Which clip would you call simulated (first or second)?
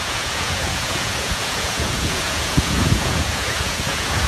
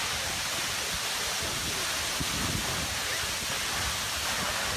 first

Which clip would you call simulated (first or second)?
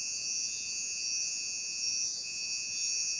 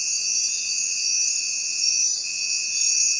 first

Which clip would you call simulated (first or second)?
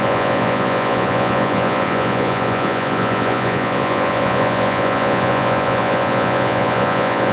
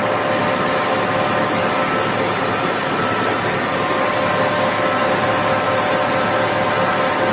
first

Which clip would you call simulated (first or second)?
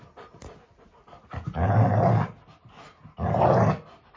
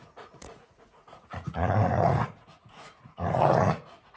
second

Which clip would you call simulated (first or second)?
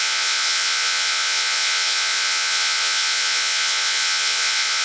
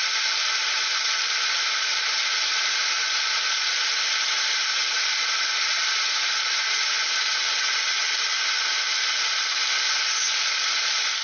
first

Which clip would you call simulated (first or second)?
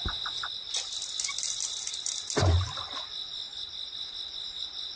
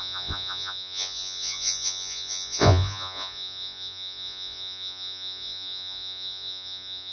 second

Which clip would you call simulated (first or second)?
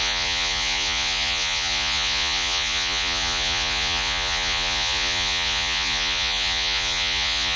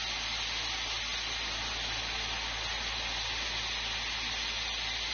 first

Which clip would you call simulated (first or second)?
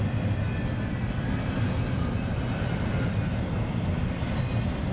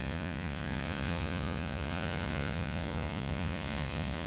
second